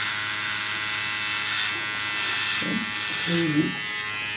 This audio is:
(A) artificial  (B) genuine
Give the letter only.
B